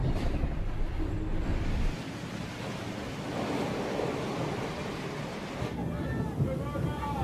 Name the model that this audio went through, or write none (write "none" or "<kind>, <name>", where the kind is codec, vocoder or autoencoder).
none